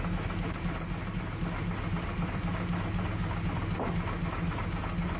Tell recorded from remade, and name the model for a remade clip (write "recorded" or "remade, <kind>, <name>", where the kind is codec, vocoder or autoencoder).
recorded